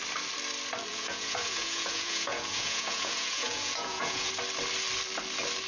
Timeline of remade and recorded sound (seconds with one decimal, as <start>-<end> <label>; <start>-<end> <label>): 0.0-0.9 recorded; 0.9-4.3 remade; 4.3-5.7 recorded